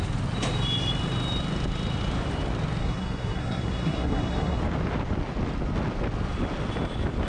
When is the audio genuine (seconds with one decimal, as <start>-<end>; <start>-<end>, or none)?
0.0-2.8; 4.6-7.3

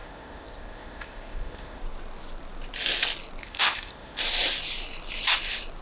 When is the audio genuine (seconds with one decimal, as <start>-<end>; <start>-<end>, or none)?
1.8-3.4; 4.2-5.8

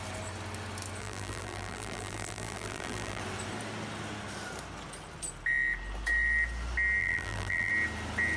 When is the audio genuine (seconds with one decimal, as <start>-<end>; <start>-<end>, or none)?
0.0-1.0; 3.2-7.0; 7.7-8.4